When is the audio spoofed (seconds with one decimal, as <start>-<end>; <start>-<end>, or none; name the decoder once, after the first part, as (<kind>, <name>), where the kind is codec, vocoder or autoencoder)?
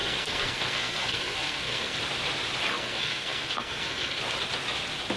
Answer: 0.0-2.0 (codec, SNAC); 2.7-4.2